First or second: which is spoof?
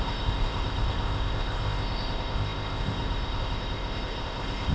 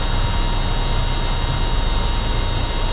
first